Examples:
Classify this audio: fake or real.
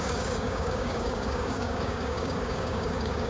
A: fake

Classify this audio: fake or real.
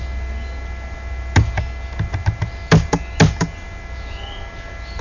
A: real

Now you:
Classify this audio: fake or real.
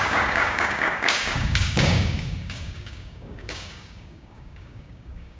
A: fake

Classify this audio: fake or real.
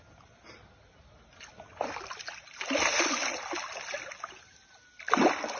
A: real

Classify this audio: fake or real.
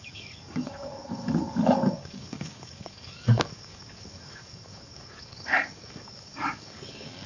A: fake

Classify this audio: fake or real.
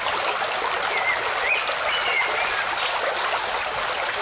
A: real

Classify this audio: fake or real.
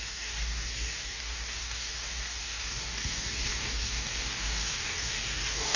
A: fake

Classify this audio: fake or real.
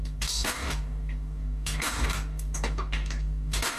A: fake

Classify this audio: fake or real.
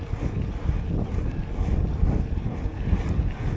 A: real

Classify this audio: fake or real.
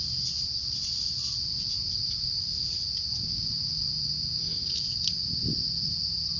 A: real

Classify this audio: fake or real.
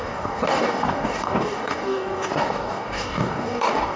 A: fake